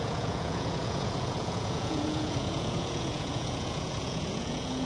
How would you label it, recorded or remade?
remade